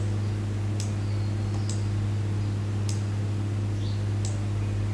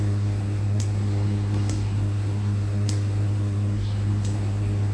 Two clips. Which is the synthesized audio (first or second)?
second